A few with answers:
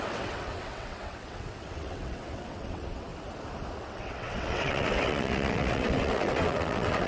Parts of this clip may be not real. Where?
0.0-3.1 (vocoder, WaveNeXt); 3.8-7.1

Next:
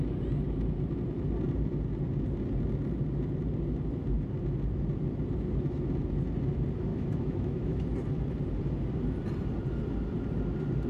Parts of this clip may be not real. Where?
6.9-7.8 (autoencoder, DAC-VAE)

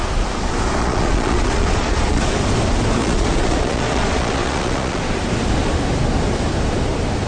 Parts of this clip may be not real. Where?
0.8-2.3 (vocoder, Vocos); 3.0-5.0

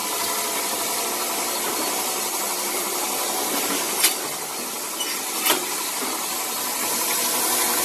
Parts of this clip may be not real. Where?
0.0-1.1 (vocoder, BigVGAN v2)

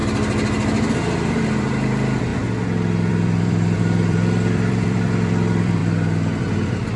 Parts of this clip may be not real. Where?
1.3-2.3 (vocoder, BigVGAN v2); 3.1-5.8

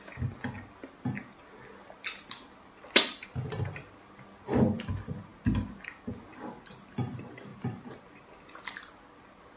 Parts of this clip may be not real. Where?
7.5-8.1 (vocoder, BigVGAN v2)

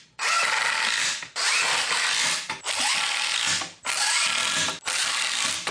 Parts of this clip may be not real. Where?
none